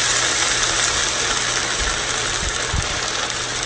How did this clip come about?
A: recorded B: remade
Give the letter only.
A